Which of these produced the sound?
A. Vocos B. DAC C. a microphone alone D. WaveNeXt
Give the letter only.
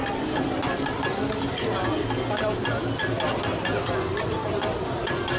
C